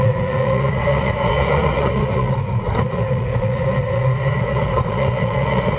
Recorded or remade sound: remade